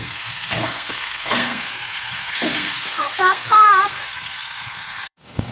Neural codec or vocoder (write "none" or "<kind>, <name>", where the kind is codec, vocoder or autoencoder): codec, SNAC